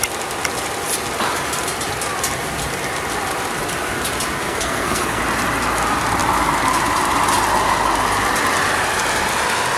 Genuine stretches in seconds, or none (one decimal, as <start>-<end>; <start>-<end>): 0.0-4.4; 5.2-9.8